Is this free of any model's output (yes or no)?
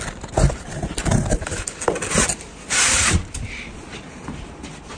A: yes